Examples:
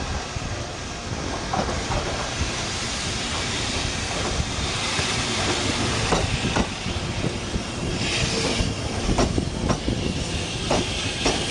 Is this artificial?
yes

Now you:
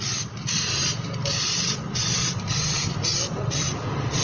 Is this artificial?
no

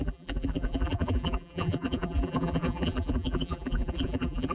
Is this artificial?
yes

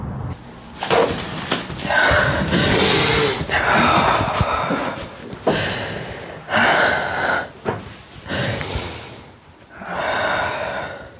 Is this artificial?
no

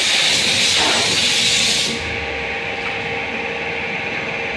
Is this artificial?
no